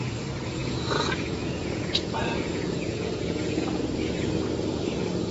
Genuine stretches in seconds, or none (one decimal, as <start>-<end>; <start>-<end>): 0.0-0.6; 3.8-5.3